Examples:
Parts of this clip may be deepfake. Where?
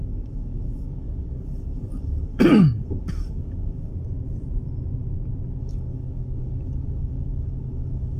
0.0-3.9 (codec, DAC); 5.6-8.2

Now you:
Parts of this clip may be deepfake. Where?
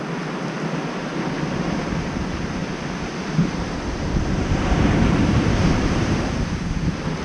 2.6-6.7 (vocoder, BigVGAN v2)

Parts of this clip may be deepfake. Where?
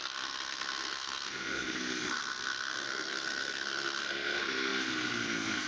0.0-5.7 (codec, SNAC)